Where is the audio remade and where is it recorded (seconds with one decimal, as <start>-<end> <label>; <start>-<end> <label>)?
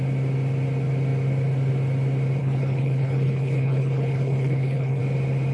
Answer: 0.0-2.4 recorded; 2.4-5.0 remade; 5.0-5.5 recorded